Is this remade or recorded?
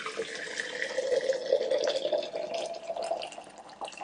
recorded